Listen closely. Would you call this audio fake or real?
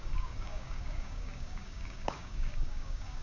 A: fake